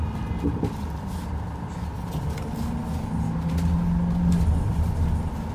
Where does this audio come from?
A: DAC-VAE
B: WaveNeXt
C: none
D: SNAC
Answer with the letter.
C